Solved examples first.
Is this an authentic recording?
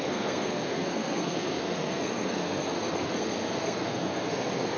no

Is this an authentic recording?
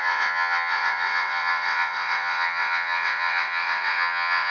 no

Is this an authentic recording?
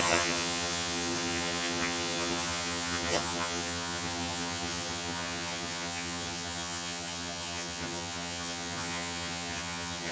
no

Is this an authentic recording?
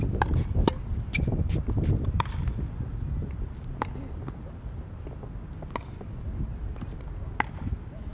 yes